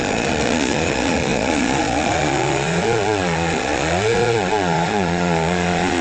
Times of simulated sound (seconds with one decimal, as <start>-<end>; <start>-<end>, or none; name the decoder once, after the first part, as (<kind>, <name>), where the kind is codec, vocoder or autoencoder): 0.0-6.0 (vocoder, Vocos)